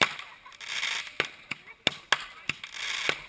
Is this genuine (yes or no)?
yes